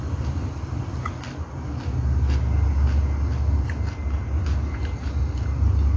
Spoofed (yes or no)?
no